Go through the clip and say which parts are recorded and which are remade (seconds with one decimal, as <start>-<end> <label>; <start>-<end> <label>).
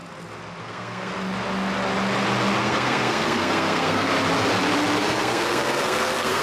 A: 0.0-0.6 recorded; 0.6-1.1 remade; 1.1-2.6 recorded; 2.6-4.1 remade; 4.1-5.0 recorded; 5.0-6.4 remade